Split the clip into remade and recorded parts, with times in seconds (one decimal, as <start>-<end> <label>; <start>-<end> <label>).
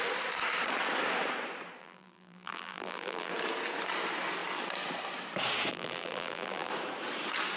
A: 0.0-1.8 recorded; 1.8-3.3 remade; 3.3-5.7 recorded; 5.7-6.7 remade; 6.7-7.6 recorded